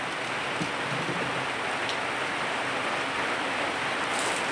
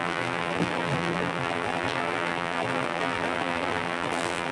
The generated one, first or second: second